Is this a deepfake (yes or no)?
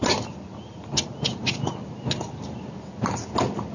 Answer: no